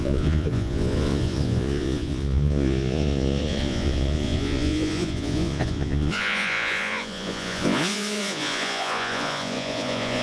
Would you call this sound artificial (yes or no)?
yes